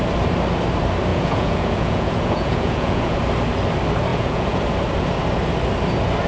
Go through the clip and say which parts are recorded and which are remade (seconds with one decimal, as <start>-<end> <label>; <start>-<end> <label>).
0.0-1.1 recorded; 1.1-3.2 remade; 3.2-4.1 recorded; 4.1-4.6 remade; 4.6-6.3 recorded